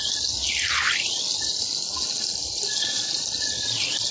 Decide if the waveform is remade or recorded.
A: recorded